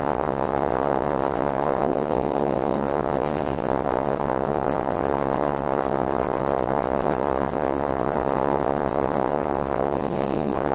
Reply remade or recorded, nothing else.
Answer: remade